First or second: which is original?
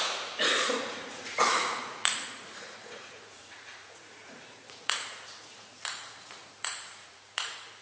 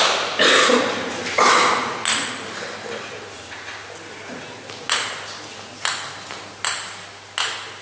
second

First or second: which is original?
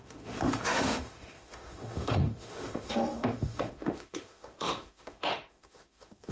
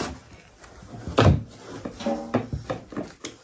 second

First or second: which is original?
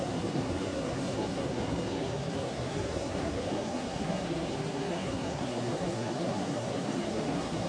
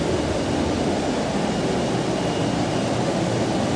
second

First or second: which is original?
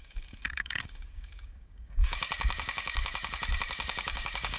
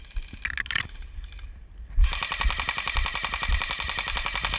second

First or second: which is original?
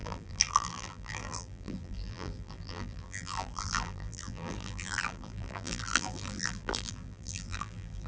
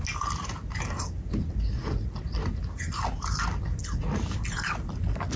second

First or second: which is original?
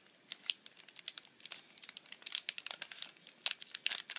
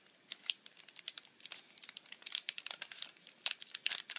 first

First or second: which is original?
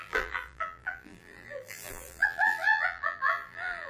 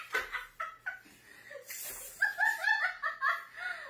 second